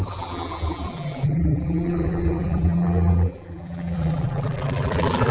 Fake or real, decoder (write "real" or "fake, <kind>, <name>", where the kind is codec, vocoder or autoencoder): fake, vocoder, BigVGAN v2